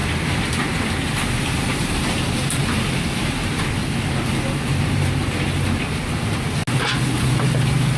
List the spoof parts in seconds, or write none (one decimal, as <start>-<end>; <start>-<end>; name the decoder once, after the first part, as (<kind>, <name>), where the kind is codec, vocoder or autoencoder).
1.4-3.8 (vocoder, BigVGAN v2); 4.8-6.6; 7.2-8.0

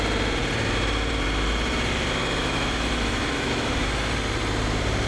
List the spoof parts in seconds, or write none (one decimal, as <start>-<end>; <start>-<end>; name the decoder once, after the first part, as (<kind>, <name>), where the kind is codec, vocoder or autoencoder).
2.4-4.1 (autoencoder, DAC-VAE)

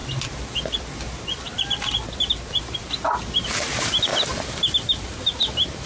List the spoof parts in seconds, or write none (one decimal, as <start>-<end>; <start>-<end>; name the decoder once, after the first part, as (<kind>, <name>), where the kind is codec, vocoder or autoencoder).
none

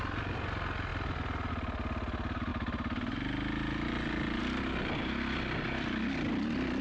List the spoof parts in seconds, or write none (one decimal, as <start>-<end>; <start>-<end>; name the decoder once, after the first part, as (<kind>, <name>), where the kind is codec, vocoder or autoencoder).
none

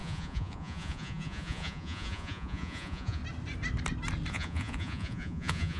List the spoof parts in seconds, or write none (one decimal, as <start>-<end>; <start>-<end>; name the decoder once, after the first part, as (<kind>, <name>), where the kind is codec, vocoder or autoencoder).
0.0-3.2 (vocoder, Vocos); 4.3-5.8